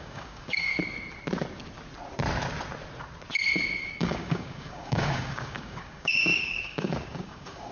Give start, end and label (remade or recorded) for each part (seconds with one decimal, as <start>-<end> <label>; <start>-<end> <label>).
0.0-0.7 remade; 0.7-3.9 recorded; 3.9-7.7 remade